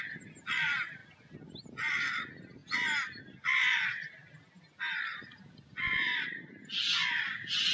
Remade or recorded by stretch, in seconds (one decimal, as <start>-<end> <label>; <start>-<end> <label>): 0.0-7.7 recorded